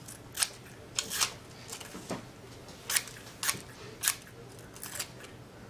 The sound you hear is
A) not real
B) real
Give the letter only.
B